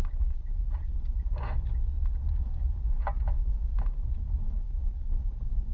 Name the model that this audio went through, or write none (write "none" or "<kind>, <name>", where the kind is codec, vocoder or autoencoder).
vocoder, BigVGAN v2